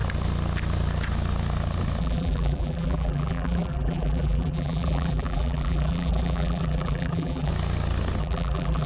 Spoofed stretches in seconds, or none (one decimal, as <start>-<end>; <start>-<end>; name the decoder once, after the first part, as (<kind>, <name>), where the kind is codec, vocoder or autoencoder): 2.0-7.5 (vocoder, BigVGAN v2); 8.2-8.9